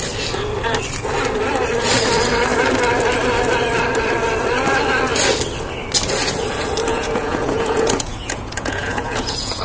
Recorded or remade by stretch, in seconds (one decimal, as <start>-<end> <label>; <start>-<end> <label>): 0.0-6.9 recorded; 6.9-9.6 remade